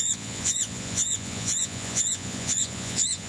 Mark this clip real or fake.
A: fake